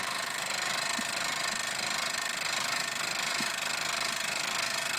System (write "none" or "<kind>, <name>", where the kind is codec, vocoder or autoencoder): none